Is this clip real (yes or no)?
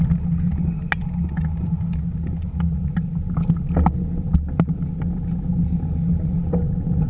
yes